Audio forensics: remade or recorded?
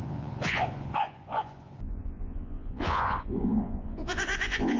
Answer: remade